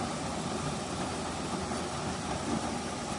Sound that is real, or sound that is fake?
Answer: real